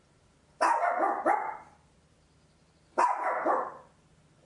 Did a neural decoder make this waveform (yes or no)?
no